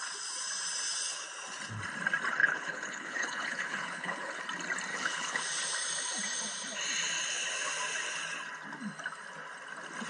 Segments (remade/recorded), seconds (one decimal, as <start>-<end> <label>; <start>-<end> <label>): 0.0-2.4 recorded; 2.4-4.4 remade; 4.4-4.9 recorded; 4.9-5.4 remade; 5.4-10.1 recorded